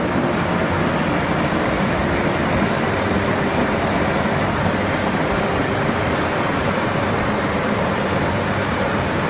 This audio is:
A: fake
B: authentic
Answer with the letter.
B